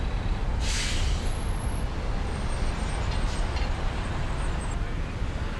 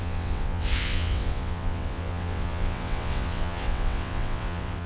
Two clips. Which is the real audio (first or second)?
first